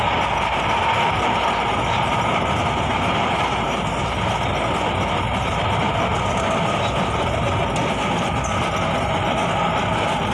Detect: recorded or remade recorded